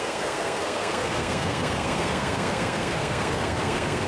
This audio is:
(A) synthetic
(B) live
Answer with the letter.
A